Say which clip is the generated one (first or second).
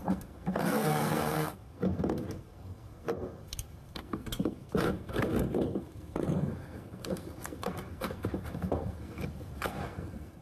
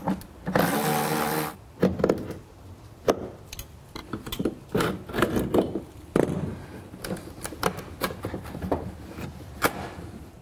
first